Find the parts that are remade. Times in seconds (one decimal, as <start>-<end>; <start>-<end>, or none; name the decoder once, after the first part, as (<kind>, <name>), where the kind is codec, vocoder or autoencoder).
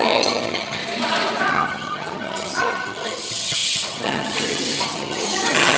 0.0-0.8 (vocoder, HiFi-GAN); 1.5-5.8